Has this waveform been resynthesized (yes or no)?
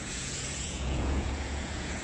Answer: yes